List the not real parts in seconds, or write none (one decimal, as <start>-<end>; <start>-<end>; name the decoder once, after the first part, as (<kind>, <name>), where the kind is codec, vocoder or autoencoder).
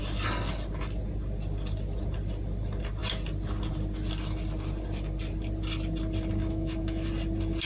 6.4-7.1 (autoencoder, DAC-VAE)